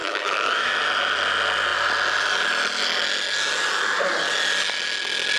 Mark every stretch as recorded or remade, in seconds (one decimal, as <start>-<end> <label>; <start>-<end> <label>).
0.0-0.7 remade; 0.7-5.4 recorded